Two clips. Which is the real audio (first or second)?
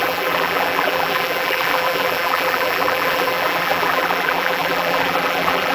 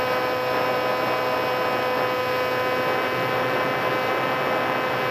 second